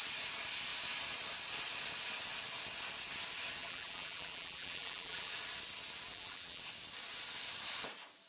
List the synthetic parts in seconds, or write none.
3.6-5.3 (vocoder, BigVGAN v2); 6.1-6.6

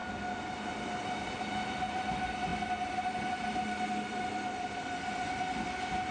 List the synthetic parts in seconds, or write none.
none

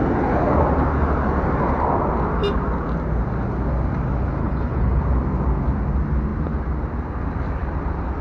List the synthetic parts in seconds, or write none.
4.4-5.0 (codec, HILCodec)